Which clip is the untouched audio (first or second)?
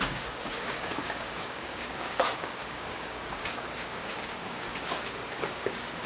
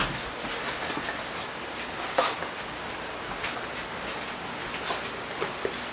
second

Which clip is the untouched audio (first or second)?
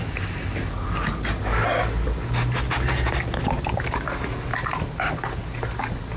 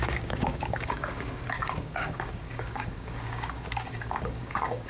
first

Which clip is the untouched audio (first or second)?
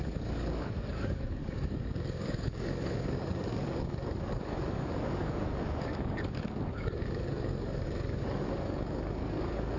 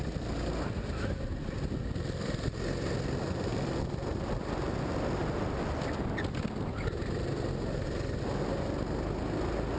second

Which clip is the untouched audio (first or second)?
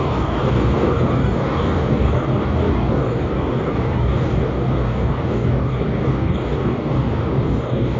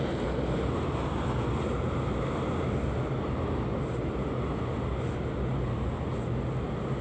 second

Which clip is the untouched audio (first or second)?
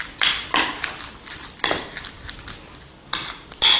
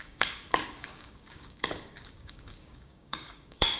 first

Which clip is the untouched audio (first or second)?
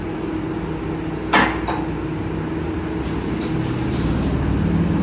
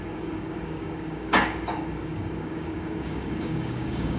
first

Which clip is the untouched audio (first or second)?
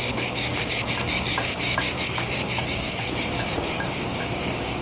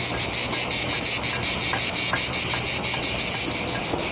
second